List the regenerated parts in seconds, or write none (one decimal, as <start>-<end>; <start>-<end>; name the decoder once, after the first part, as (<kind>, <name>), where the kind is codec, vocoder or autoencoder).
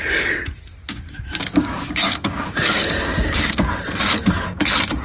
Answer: 0.7-3.7 (codec, DAC)